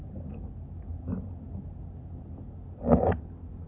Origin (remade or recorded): recorded